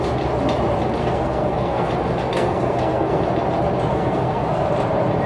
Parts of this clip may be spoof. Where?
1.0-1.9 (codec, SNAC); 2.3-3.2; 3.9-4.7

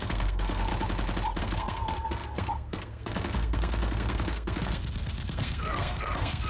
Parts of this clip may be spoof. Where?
0.0-0.7 (codec, SNAC); 1.4-6.5

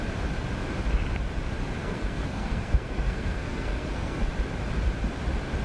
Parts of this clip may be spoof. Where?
1.8-4.3 (codec, SNAC)

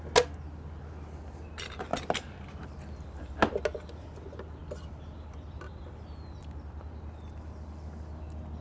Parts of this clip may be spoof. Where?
none

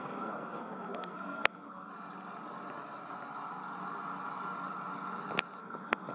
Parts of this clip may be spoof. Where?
0.0-1.9 (codec, SNAC); 5.6-6.1

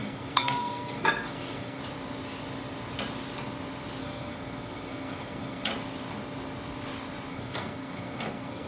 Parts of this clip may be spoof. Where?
0.0-1.8 (codec, SNAC); 4.0-5.7; 7.3-8.7